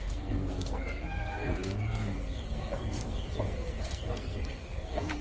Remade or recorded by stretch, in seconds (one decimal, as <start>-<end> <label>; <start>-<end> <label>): 0.0-5.2 remade